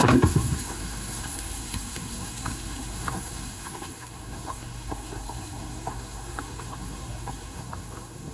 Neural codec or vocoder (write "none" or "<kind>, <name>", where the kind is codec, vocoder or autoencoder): codec, SNAC